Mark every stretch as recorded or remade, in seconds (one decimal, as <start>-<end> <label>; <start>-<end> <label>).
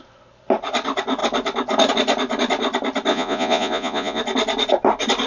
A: 0.0-3.1 recorded; 3.1-4.2 remade; 4.2-5.3 recorded